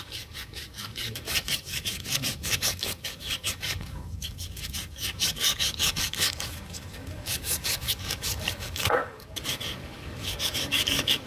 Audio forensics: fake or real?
fake